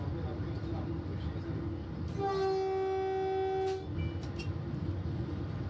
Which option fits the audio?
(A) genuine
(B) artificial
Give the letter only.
A